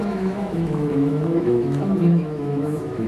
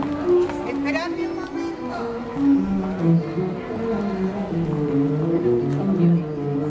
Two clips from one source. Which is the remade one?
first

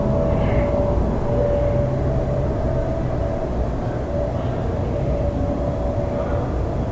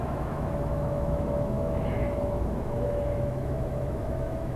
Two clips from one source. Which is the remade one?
second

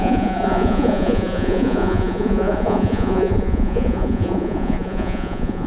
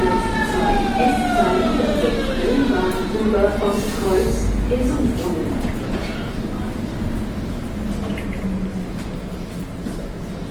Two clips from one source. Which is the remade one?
first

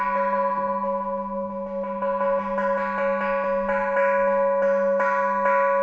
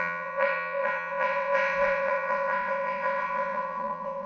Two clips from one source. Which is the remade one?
second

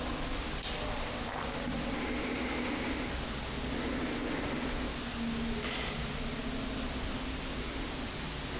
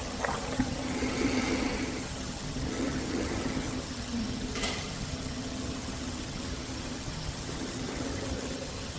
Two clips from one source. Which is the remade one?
second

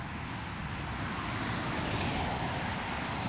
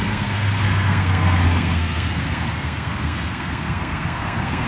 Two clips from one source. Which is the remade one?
second